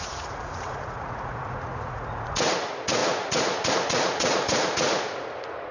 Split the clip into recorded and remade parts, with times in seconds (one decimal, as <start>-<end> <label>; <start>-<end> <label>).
0.0-5.7 remade

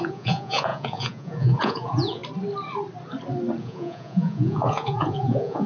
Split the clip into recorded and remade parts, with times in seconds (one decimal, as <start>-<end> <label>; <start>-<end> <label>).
0.0-2.2 remade; 2.2-3.6 recorded; 3.6-5.7 remade

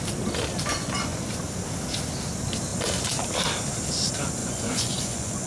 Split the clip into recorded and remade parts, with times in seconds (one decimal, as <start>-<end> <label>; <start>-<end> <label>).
0.0-0.7 recorded; 0.7-1.2 remade; 1.2-4.4 recorded; 4.4-5.5 remade

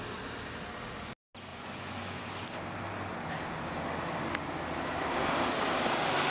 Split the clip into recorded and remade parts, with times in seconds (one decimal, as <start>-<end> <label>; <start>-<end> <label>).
0.0-1.5 recorded; 1.5-2.2 remade; 2.2-6.3 recorded

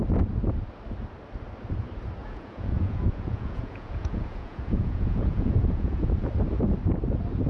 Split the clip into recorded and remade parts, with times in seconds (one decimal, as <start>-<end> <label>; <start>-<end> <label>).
0.0-2.2 recorded; 2.2-6.3 remade; 6.3-7.5 recorded

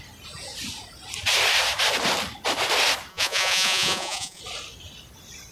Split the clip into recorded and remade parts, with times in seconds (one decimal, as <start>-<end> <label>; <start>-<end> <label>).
0.0-3.1 recorded; 3.1-4.4 remade; 4.4-5.5 recorded

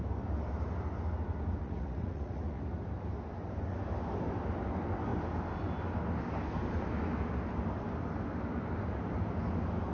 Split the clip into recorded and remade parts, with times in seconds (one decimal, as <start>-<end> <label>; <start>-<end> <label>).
0.0-1.6 recorded; 1.6-2.6 remade; 2.6-9.9 recorded